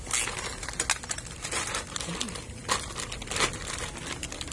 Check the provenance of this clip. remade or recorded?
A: recorded